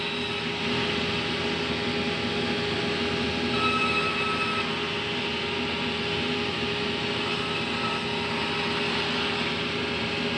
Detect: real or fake real